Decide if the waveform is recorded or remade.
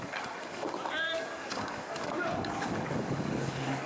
remade